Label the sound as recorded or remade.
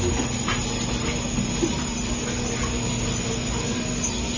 recorded